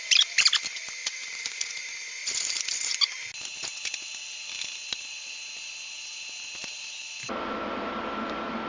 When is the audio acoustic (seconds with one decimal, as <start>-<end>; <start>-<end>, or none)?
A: 0.0-1.0; 1.7-8.7